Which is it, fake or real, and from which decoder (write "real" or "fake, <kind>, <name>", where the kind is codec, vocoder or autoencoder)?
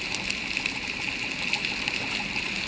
real